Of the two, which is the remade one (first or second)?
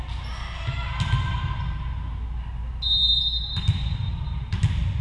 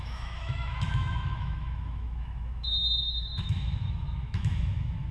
second